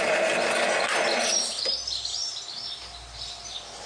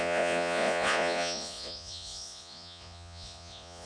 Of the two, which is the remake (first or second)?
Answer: second